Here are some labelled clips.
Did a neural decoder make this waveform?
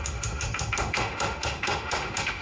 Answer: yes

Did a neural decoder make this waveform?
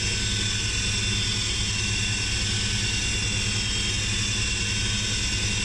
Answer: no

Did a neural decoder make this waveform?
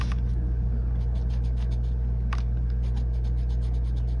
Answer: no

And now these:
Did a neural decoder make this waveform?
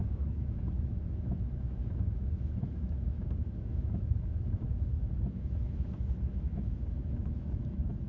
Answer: yes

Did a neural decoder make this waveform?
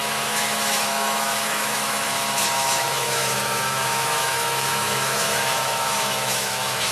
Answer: yes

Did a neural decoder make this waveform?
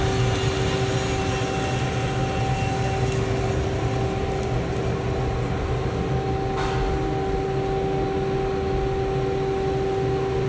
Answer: no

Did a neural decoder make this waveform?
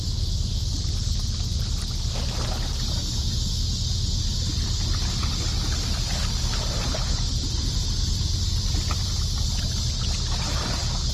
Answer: no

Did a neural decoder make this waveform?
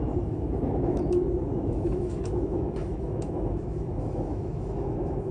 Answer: yes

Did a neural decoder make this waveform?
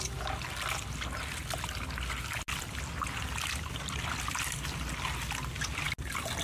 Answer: no